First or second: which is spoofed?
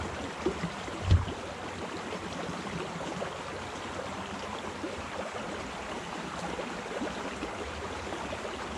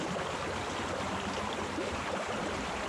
second